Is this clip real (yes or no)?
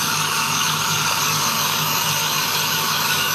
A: no